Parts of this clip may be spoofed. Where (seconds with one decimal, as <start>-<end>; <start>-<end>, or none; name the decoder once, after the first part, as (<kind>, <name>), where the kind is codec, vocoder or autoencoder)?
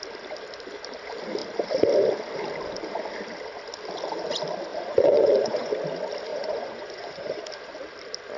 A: 4.7-5.7 (vocoder, Vocos); 6.3-7.4